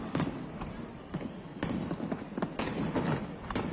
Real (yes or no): yes